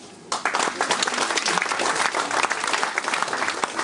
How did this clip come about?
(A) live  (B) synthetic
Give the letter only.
A